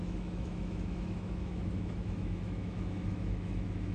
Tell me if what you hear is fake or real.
fake